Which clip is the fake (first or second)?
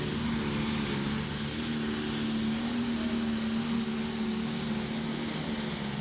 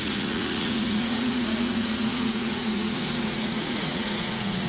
second